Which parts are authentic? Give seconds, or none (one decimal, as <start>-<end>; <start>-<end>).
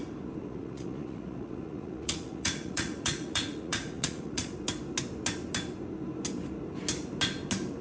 0.0-0.4; 4.5-7.8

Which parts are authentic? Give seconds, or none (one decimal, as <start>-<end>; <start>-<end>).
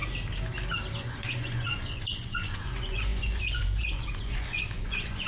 0.0-1.0